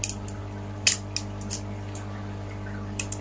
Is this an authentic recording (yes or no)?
yes